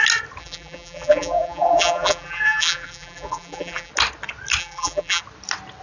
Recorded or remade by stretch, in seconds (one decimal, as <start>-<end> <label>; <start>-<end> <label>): 0.0-0.4 recorded; 0.4-3.9 remade; 3.9-4.6 recorded; 4.6-5.2 remade; 5.2-5.8 recorded